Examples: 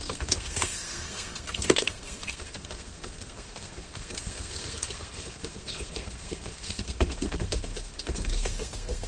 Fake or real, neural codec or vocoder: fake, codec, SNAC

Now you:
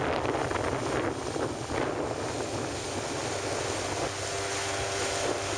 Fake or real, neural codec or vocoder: real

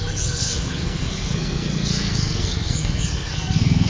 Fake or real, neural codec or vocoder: fake, codec, SNAC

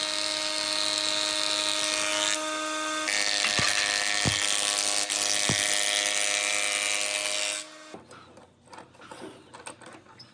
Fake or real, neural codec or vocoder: real